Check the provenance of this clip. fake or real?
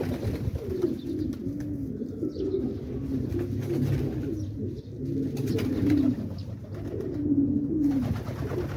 real